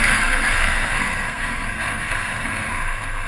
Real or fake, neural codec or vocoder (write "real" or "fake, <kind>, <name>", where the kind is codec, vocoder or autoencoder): fake, codec, SNAC